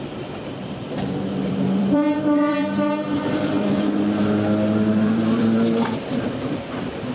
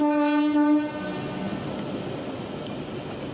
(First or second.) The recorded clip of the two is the second